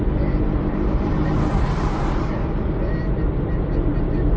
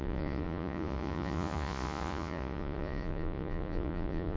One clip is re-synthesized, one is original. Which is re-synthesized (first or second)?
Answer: second